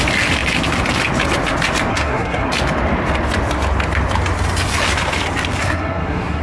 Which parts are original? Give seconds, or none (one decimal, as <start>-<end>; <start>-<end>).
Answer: 0.0-1.9; 2.5-5.6